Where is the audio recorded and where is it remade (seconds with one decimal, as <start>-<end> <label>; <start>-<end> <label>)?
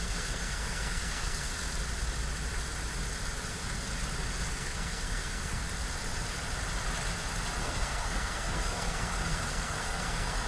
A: 0.0-1.5 remade; 1.5-3.5 recorded; 3.5-3.9 remade; 3.9-4.5 recorded; 4.5-5.6 remade; 5.6-7.6 recorded; 7.6-10.5 remade